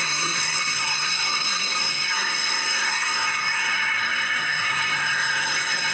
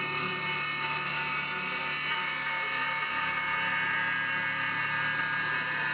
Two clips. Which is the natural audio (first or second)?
second